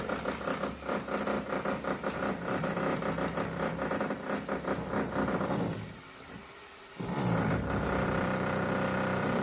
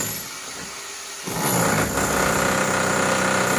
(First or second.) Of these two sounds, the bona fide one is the second